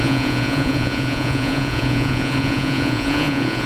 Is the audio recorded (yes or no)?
no